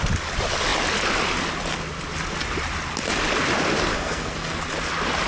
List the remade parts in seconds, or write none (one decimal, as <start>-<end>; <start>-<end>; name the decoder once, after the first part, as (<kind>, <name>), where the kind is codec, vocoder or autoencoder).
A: 3.9-4.6 (codec, SNAC)